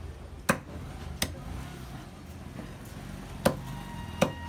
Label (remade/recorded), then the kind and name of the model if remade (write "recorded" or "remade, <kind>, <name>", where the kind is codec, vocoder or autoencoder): recorded